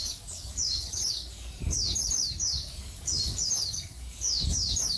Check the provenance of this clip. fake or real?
fake